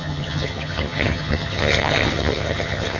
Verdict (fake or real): fake